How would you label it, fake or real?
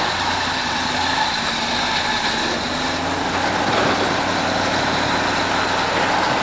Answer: real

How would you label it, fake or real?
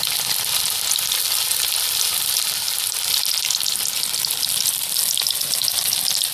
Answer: real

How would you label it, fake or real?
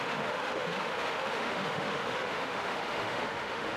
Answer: fake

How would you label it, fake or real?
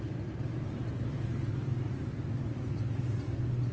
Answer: real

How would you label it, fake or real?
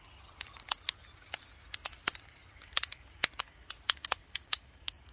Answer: real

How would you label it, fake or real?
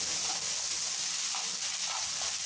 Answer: real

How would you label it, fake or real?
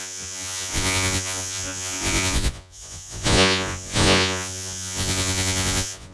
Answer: fake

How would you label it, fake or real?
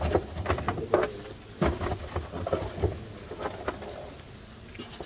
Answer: real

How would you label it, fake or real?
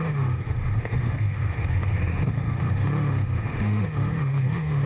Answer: fake